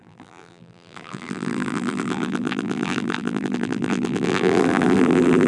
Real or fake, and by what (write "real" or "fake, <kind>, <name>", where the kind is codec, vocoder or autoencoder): fake, vocoder, BigVGAN v2